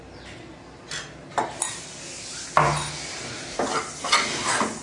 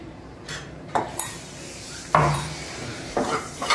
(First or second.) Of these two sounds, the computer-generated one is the second